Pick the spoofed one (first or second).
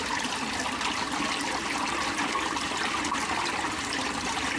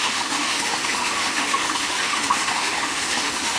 second